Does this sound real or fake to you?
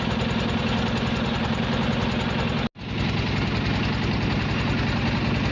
real